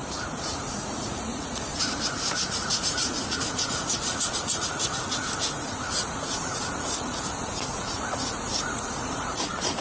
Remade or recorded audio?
remade